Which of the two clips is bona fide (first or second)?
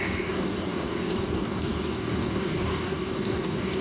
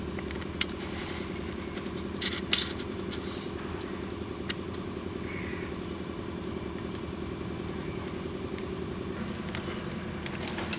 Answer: second